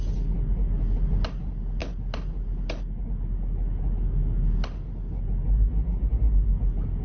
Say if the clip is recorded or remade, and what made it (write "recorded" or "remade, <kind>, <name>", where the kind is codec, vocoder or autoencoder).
recorded